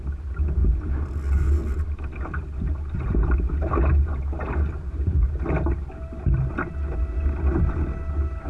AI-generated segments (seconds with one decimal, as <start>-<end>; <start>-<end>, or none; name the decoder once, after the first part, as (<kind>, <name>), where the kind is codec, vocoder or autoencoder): none